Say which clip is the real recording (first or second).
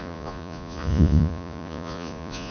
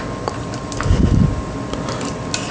second